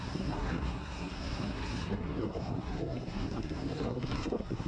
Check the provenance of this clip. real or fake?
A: fake